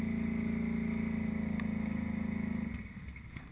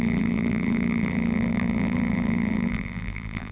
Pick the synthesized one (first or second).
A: second